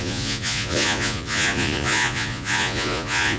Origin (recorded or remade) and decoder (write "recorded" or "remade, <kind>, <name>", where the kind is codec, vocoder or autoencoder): remade, vocoder, Vocos